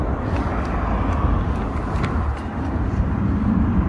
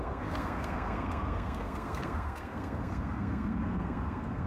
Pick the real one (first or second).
first